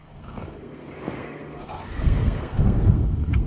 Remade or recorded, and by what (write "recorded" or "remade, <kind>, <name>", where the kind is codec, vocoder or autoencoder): remade, codec, SNAC